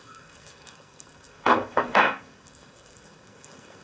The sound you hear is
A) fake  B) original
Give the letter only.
A